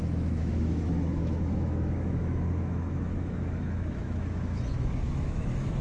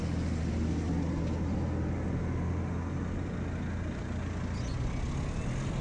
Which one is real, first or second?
second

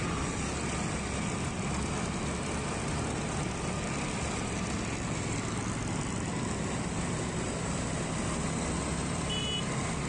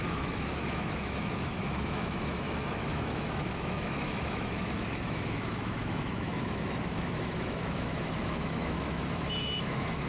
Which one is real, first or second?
first